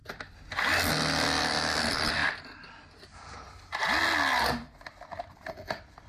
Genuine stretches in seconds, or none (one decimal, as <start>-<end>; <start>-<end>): 0.0-6.1